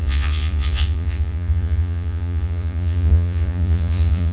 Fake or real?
fake